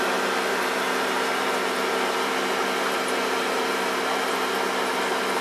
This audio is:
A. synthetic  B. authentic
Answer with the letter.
B